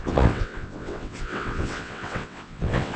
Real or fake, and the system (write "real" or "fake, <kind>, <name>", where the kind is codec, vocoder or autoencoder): fake, vocoder, WaveNeXt